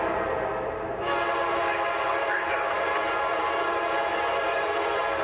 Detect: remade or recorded recorded